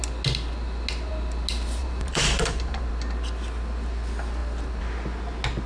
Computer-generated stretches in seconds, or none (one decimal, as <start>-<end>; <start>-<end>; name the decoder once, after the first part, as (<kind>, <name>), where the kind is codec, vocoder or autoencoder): 1.8-2.9 (vocoder, BigVGAN v2)